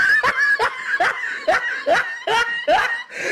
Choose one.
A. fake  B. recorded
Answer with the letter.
B